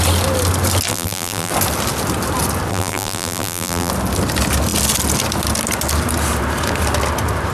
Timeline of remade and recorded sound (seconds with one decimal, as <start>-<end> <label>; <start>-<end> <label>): 0.0-0.9 recorded; 0.9-1.5 remade; 1.5-2.7 recorded; 2.7-3.9 remade; 3.9-7.5 recorded